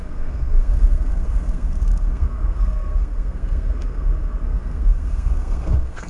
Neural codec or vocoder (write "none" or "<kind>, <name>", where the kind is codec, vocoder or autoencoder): codec, SNAC